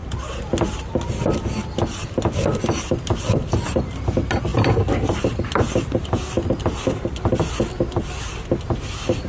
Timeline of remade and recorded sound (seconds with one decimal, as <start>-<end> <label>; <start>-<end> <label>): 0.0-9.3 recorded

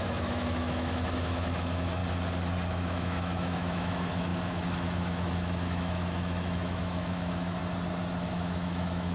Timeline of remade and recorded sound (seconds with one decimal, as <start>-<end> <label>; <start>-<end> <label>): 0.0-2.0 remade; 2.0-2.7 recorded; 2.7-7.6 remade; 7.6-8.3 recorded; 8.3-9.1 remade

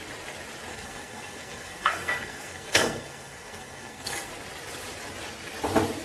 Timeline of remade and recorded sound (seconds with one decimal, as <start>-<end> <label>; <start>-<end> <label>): 0.0-0.7 recorded; 0.7-4.3 remade; 4.3-6.0 recorded

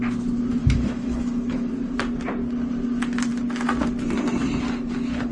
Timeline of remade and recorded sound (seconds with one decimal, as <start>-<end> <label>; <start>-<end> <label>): 0.0-0.6 recorded; 0.6-1.7 remade; 1.7-5.3 recorded